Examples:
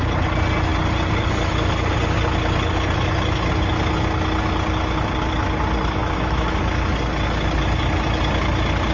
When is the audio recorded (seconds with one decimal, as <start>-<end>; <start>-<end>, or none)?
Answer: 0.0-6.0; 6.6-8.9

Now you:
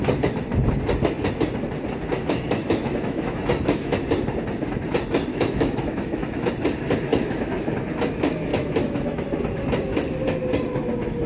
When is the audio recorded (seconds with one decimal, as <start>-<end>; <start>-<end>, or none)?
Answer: 0.0-2.6; 4.0-5.3; 6.5-7.1; 7.7-8.5; 9.2-11.3

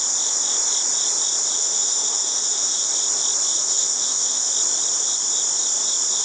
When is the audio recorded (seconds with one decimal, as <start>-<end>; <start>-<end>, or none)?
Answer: 0.0-1.6; 2.9-3.6; 4.5-6.2

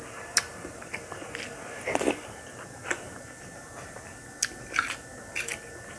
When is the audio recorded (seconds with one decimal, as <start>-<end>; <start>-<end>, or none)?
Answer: 0.0-6.0

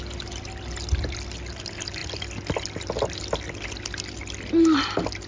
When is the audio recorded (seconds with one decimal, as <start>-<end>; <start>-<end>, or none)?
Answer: 0.0-5.3